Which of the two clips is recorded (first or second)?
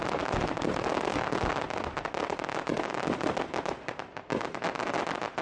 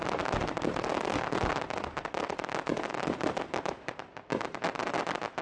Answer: first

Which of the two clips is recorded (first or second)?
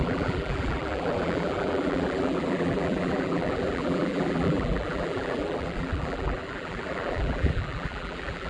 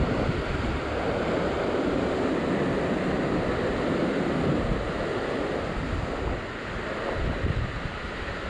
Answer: second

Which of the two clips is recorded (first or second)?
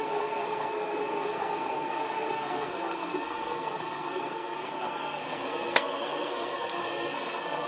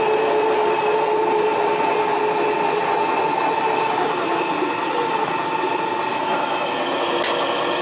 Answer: second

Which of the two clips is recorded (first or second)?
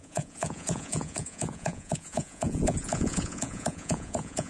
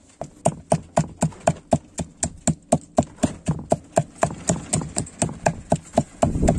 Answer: second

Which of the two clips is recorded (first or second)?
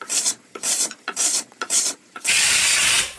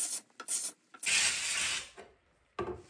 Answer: second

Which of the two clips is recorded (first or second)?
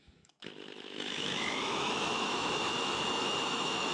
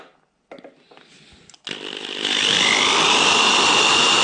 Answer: second